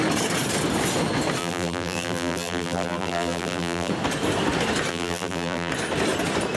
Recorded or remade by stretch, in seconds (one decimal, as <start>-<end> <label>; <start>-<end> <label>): 0.0-1.4 recorded; 1.4-3.9 remade; 3.9-4.9 recorded; 4.9-5.7 remade; 5.7-6.6 recorded